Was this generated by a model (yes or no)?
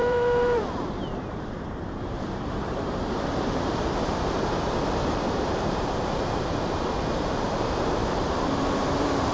yes